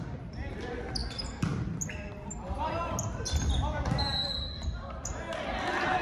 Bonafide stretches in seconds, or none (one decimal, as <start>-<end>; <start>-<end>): 0.0-6.0